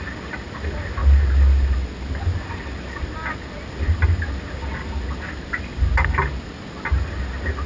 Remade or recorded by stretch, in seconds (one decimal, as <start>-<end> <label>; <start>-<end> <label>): 0.0-7.7 recorded